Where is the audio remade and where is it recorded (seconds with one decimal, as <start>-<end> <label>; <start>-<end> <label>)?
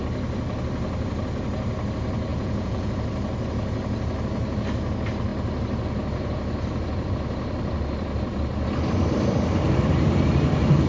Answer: 0.0-2.3 recorded; 2.3-2.9 remade; 2.9-10.9 recorded